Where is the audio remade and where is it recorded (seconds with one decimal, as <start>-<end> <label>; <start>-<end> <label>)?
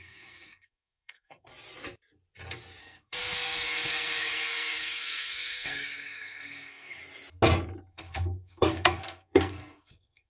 0.0-1.5 remade; 1.5-2.8 recorded; 2.8-7.0 remade; 7.0-7.9 recorded; 7.9-10.3 remade